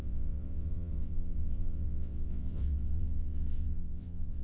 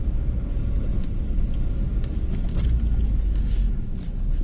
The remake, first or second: first